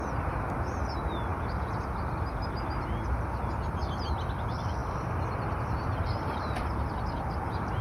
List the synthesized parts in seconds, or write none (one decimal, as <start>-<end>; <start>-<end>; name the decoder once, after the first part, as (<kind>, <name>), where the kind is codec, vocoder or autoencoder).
4.8-7.1 (vocoder, BigVGAN v2)